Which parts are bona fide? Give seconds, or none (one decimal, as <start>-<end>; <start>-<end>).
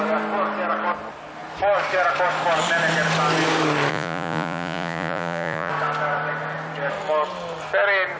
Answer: 0.0-3.9; 5.7-8.2